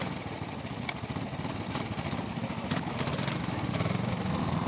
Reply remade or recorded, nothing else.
recorded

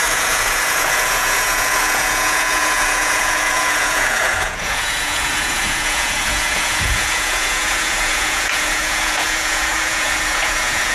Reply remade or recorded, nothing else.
remade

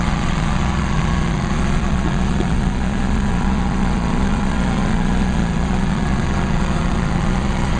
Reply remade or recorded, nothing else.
remade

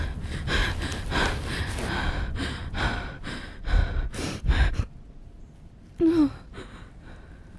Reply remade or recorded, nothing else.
recorded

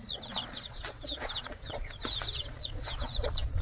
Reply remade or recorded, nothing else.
remade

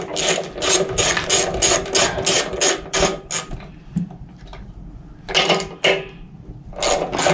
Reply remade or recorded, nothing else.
recorded